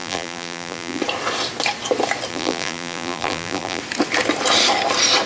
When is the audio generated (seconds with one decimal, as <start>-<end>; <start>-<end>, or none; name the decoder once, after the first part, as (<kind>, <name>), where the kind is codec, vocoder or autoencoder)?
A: 0.0-1.0 (vocoder, BigVGAN v2); 2.3-3.8